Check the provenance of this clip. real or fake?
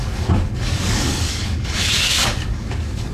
fake